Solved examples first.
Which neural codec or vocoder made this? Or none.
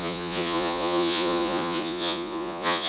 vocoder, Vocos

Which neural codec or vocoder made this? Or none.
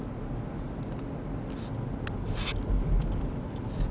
none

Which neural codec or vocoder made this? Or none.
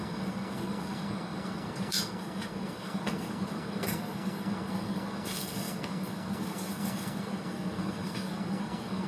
codec, SNAC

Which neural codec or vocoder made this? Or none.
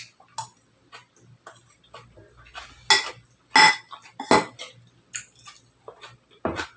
none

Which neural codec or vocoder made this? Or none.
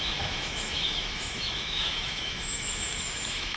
autoencoder, DAC-VAE